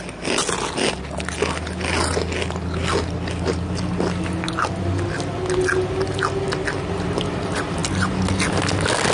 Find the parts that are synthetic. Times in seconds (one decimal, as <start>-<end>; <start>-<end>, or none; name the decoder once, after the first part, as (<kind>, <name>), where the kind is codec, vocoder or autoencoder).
none